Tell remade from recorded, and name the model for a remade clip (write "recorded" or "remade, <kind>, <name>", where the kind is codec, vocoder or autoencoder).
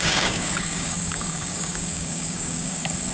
remade, codec, DAC